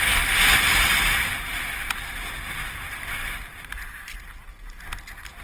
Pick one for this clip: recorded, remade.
recorded